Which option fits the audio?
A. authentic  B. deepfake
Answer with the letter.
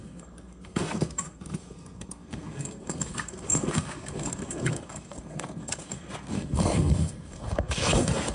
B